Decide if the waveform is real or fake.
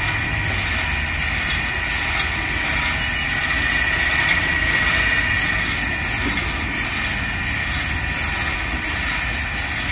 real